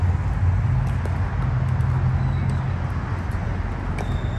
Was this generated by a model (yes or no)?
no